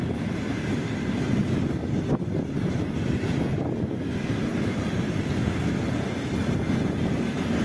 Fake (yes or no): no